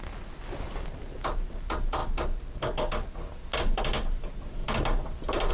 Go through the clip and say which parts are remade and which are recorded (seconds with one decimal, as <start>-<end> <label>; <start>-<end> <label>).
0.0-5.5 recorded